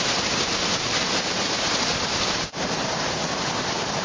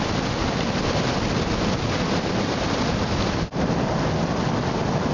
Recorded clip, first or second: second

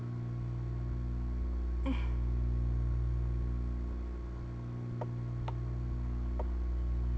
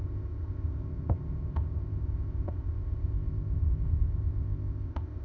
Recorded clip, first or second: first